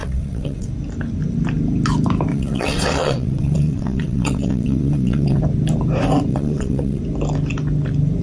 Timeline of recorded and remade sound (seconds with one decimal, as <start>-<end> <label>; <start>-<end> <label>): 0.0-0.7 remade; 0.7-2.3 recorded; 2.3-5.4 remade; 5.4-6.3 recorded; 6.3-7.0 remade; 7.0-8.2 recorded